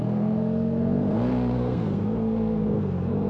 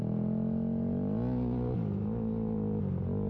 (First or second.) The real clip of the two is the second